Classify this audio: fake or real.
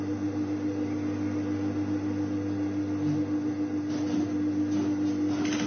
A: real